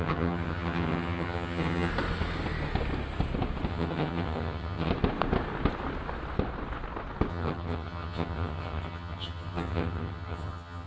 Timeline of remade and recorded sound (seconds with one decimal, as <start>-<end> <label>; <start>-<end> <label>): 0.0-1.9 remade; 1.9-3.7 recorded; 3.7-4.9 remade; 4.9-7.3 recorded; 7.3-10.9 remade